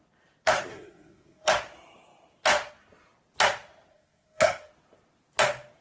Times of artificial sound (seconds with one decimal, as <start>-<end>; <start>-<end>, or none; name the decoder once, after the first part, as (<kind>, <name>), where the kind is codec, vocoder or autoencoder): 0.7-1.5 (codec, SNAC); 3.9-4.7

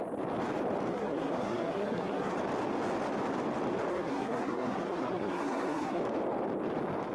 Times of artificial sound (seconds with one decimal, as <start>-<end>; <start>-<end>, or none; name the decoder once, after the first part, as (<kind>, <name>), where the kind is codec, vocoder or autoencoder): 0.9-2.3 (codec, SNAC); 3.9-6.0

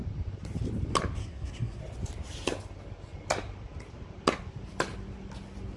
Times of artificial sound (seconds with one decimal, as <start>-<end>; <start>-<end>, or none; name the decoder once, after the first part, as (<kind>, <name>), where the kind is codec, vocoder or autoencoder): 1.2-1.8 (codec, SNAC)

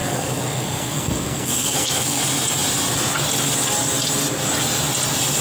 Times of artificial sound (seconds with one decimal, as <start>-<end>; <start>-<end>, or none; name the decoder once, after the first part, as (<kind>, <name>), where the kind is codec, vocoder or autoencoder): 0.0-2.2 (codec, SNAC)